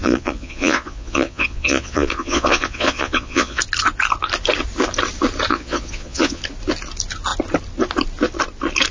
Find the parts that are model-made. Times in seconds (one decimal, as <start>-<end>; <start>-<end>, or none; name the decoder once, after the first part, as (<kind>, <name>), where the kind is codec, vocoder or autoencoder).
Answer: 0.0-3.6 (vocoder, Vocos); 5.5-6.4